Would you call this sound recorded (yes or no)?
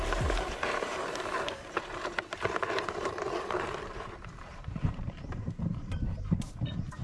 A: no